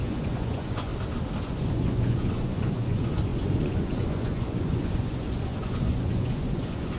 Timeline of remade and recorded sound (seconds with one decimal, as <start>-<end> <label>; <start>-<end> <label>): 0.0-0.9 remade; 0.9-1.4 recorded; 1.4-7.0 remade